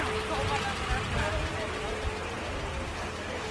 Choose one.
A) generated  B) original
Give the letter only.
B